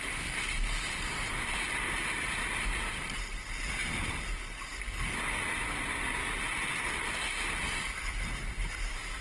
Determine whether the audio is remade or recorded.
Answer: recorded